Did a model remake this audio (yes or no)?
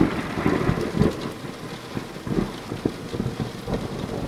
no